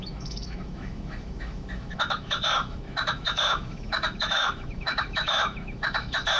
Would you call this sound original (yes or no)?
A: no